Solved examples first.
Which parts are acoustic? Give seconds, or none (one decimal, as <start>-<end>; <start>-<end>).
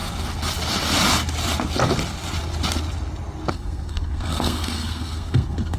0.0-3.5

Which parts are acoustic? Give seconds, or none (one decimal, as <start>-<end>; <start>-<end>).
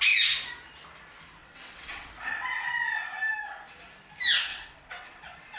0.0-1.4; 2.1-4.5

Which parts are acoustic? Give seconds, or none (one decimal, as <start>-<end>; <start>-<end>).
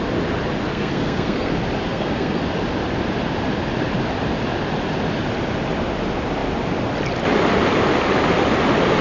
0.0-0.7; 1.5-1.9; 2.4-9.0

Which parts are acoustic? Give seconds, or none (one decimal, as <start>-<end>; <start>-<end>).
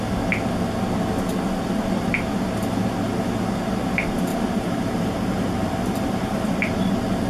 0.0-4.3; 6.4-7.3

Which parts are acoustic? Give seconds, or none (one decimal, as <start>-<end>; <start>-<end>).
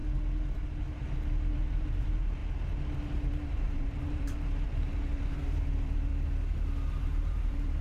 0.0-0.8; 2.4-3.3; 6.1-7.0